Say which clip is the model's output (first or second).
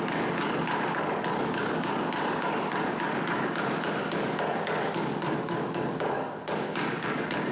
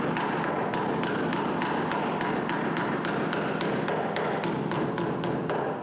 first